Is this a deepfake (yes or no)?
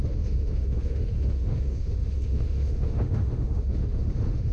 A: yes